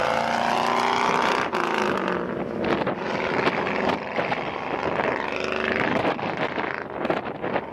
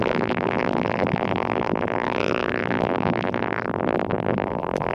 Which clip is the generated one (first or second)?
second